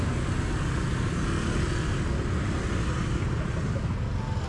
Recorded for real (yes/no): yes